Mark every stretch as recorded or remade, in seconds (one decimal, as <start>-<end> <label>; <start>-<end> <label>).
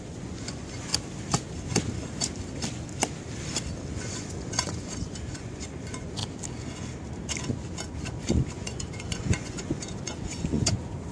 0.0-0.9 remade; 0.9-4.0 recorded; 4.0-6.2 remade; 6.2-8.5 recorded; 8.5-11.1 remade